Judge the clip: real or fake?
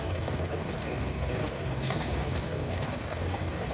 fake